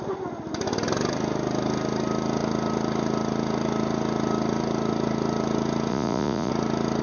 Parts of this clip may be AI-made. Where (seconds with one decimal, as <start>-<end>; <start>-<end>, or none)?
5.9-6.5